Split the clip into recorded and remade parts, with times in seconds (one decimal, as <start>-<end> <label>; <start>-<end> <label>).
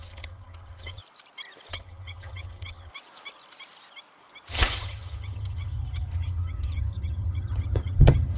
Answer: 0.0-1.0 remade; 1.0-1.7 recorded; 1.7-2.9 remade; 2.9-4.5 recorded; 4.5-8.4 remade